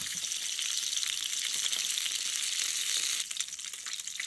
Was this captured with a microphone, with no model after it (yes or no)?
yes